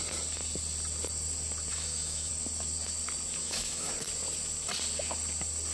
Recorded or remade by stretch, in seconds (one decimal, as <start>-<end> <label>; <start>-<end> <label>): 0.0-1.7 recorded; 1.7-2.3 remade; 2.3-3.4 recorded; 3.4-3.9 remade; 3.9-5.7 recorded